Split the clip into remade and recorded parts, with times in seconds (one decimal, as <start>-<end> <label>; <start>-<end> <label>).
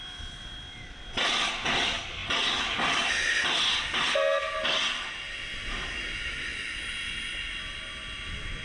0.0-8.6 recorded